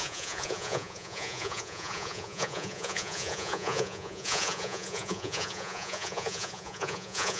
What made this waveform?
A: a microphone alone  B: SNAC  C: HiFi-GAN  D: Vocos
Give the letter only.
D